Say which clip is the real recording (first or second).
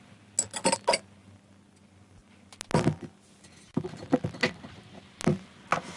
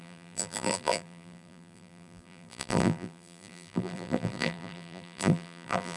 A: first